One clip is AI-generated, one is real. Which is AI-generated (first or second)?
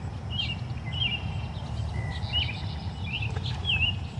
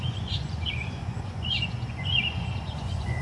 second